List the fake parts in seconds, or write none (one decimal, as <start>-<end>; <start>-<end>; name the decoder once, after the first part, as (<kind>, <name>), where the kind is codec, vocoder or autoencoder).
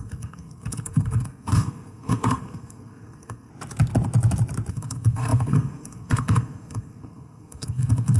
0.0-3.5 (codec, SNAC); 4.7-8.2